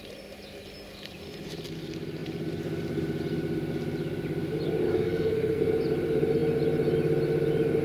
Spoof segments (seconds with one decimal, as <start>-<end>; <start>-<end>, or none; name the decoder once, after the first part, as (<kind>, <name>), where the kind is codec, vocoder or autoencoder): 4.9-5.6 (codec, SNAC)